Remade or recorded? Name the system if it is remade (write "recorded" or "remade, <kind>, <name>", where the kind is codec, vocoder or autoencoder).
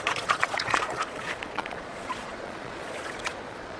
remade, vocoder, Vocos